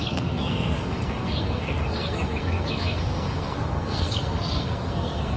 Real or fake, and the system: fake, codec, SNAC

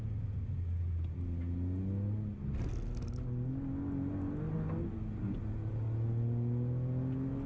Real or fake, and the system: real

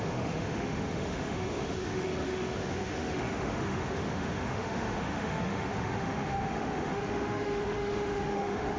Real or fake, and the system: fake, autoencoder, DAC-VAE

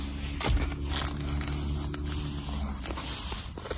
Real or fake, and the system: real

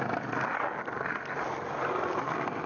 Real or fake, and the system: real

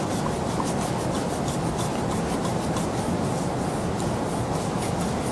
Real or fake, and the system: real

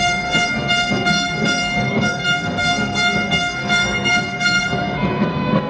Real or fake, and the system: fake, codec, SNAC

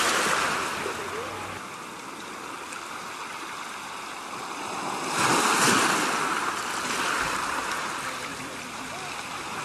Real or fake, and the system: real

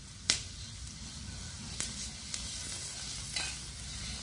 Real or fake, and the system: real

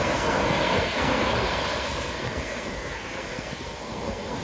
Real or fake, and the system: fake, codec, SNAC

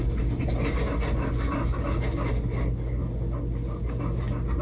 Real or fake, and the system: real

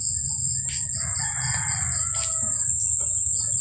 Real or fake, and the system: real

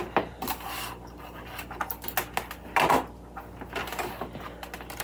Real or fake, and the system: real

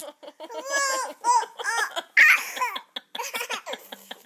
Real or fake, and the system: real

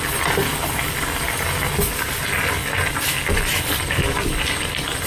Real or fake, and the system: fake, vocoder, BigVGAN v2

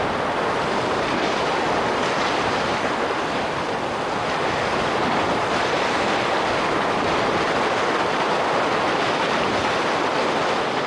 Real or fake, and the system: real